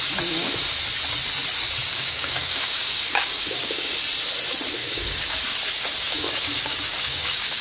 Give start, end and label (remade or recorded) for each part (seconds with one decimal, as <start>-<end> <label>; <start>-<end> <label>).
0.0-1.9 recorded; 1.9-4.0 remade; 4.0-4.8 recorded; 4.8-5.4 remade; 5.4-6.1 recorded; 6.1-7.6 remade